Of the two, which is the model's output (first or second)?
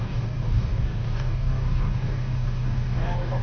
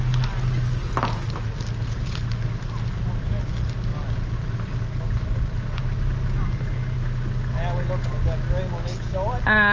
first